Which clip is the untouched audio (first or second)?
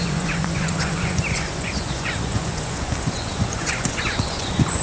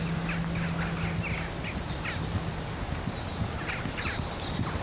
second